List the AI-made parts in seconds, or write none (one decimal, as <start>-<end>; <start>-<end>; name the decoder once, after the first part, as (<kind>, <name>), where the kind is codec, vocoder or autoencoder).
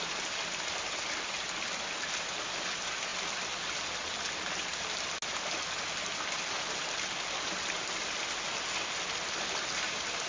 none